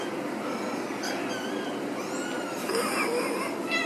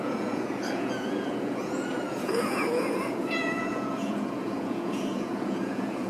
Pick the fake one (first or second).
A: second